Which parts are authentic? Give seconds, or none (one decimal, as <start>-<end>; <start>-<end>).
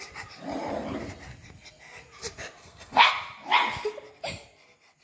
0.0-2.6; 3.1-5.0